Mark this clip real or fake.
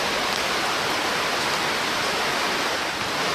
real